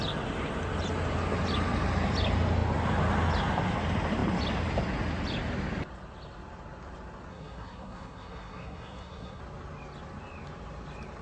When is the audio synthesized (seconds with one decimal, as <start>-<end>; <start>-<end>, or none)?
7.3-9.4